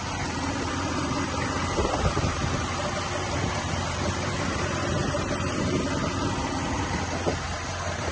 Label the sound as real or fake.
fake